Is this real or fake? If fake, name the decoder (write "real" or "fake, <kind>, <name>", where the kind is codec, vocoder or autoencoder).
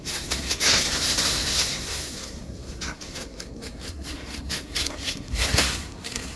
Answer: fake, codec, SNAC